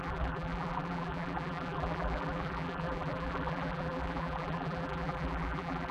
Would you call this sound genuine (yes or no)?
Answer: no